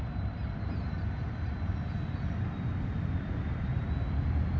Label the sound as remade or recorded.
recorded